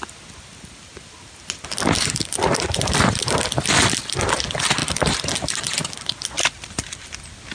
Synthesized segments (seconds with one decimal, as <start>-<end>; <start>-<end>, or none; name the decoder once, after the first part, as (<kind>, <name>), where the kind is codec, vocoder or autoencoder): none